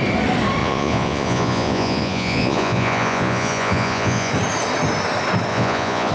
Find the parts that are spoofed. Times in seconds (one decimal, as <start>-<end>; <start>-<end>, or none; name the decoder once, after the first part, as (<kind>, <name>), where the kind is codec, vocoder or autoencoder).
0.6-4.3 (vocoder, Vocos); 5.5-6.1